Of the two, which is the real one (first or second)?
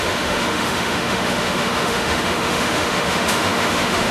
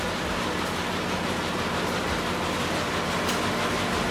second